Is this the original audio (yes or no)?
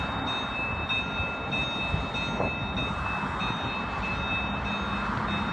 yes